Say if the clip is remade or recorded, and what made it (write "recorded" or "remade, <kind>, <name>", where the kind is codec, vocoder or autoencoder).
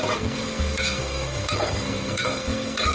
remade, codec, SNAC